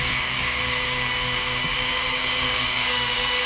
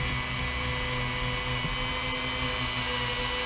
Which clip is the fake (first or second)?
first